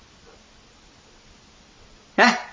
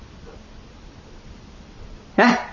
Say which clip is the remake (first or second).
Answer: second